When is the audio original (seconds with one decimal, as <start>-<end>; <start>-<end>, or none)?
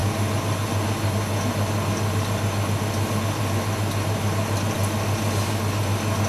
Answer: 0.0-6.3